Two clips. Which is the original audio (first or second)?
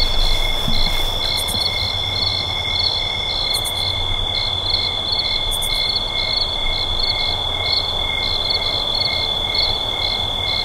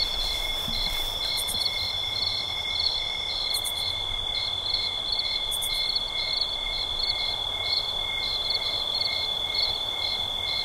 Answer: first